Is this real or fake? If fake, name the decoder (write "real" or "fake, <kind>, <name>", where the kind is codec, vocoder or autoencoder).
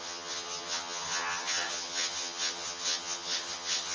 fake, vocoder, HiFi-GAN